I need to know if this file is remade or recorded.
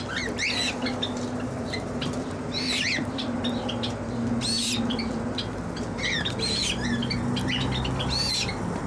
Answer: recorded